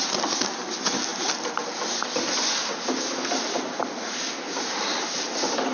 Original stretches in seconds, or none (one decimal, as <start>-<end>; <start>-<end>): 0.0-5.7